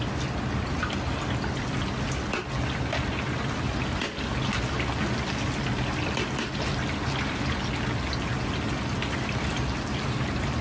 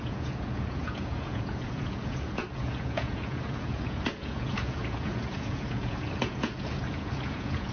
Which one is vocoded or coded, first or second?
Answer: second